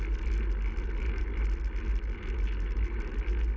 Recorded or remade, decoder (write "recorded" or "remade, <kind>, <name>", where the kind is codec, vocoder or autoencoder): recorded